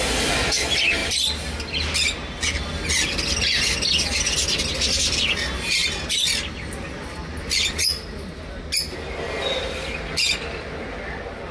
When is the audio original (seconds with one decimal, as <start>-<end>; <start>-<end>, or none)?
0.0-11.5